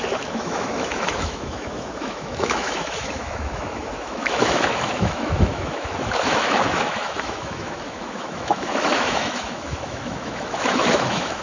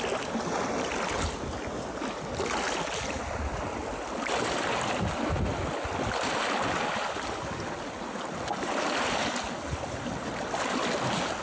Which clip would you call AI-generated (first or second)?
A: first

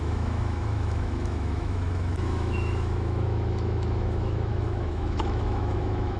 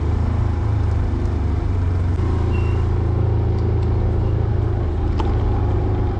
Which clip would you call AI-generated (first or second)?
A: first